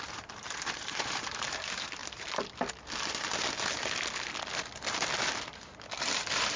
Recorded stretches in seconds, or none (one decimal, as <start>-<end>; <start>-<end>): 2.0-6.0